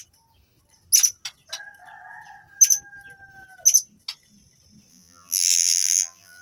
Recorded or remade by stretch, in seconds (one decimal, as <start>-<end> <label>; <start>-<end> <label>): 0.0-4.9 recorded; 4.9-6.4 remade